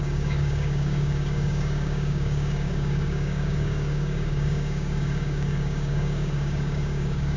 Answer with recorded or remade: remade